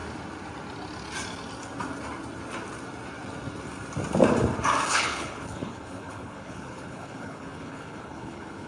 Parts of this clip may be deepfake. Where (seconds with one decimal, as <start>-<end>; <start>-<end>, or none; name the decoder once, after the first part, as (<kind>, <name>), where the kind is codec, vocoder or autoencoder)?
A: 4.9-8.7 (codec, HILCodec)